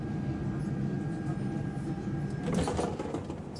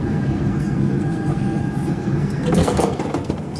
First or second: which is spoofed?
second